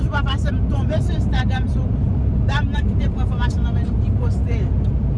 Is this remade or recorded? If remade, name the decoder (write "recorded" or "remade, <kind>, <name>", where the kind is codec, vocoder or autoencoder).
remade, vocoder, BigVGAN v2